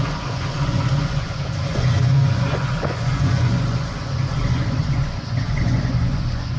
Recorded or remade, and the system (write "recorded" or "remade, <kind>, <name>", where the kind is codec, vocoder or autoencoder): remade, vocoder, Vocos